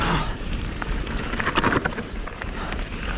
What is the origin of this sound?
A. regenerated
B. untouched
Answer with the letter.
A